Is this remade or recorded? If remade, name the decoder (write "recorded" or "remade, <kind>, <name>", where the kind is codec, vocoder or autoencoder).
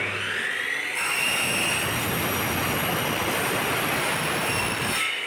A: recorded